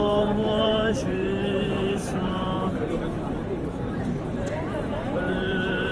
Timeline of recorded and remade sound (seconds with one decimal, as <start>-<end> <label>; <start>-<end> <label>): 0.0-5.9 remade